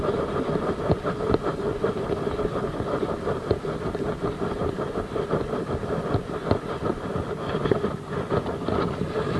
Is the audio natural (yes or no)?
no